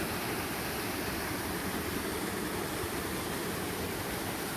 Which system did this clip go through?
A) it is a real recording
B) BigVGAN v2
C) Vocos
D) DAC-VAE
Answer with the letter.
B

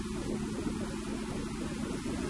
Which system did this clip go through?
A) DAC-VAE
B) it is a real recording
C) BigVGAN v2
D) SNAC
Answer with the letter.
B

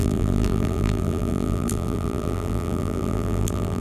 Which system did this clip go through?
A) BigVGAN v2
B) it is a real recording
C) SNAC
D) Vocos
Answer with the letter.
A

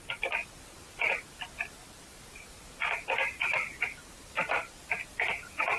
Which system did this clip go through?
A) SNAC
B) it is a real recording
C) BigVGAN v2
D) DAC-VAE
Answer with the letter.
C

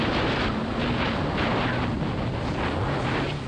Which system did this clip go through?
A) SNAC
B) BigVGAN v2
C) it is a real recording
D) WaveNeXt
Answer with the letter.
C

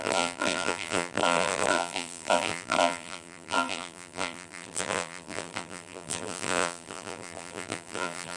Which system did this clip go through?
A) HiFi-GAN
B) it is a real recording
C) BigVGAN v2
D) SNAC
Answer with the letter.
C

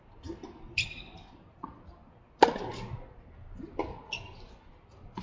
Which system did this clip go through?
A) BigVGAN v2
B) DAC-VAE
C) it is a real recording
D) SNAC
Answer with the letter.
C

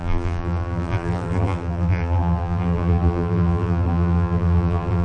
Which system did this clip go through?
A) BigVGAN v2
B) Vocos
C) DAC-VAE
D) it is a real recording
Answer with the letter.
A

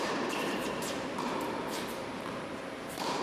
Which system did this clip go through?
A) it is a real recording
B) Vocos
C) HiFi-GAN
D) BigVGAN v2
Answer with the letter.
D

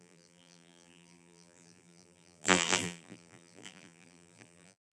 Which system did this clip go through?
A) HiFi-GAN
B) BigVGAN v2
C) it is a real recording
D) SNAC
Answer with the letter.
B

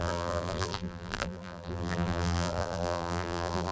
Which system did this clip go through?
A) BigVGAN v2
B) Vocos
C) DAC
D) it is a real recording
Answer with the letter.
A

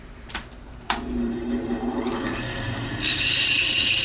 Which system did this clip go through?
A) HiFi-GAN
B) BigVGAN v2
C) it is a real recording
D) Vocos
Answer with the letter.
B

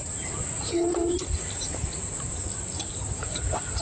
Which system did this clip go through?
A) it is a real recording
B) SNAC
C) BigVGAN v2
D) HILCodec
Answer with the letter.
C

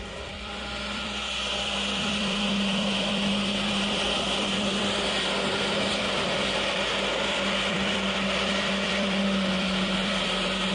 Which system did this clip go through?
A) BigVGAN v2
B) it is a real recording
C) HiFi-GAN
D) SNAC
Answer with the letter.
A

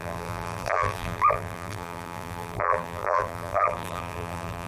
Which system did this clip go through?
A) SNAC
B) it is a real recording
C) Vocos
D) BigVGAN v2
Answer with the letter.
D